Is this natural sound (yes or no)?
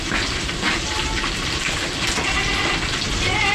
yes